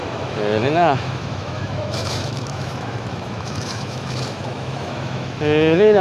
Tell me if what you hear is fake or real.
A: fake